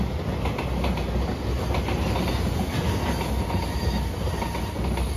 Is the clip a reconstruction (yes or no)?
no